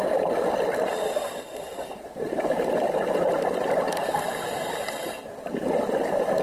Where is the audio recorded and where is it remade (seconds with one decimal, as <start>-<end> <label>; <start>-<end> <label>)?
0.0-6.4 recorded